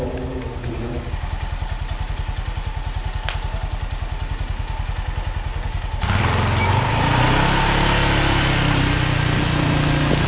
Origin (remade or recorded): recorded